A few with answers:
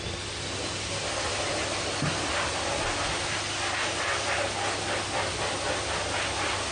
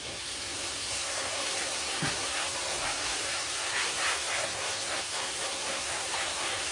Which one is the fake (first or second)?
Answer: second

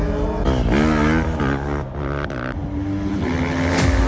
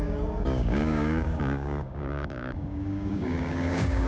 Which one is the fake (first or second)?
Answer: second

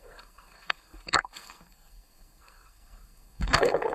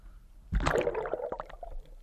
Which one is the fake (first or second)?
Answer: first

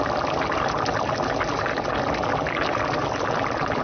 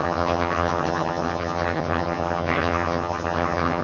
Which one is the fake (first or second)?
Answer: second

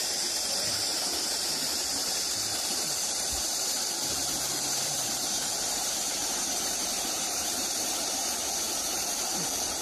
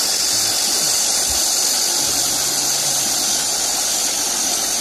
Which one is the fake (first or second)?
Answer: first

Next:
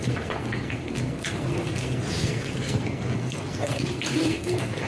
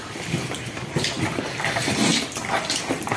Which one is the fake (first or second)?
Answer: first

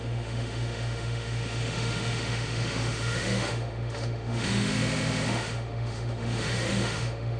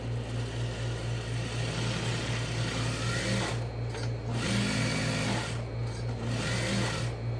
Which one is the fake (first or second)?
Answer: first